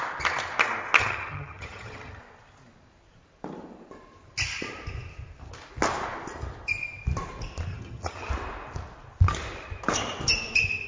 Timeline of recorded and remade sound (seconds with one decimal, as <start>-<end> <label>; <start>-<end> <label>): 0.0-1.0 recorded; 1.0-2.2 remade; 2.2-7.7 recorded; 7.7-8.3 remade; 8.3-10.9 recorded